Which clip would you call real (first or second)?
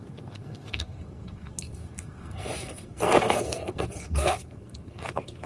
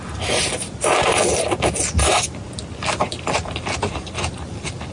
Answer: second